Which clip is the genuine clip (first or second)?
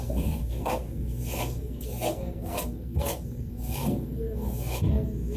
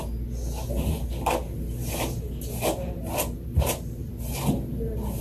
second